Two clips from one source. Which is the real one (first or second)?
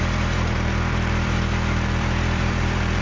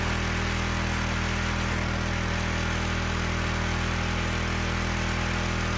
second